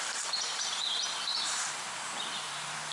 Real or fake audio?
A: fake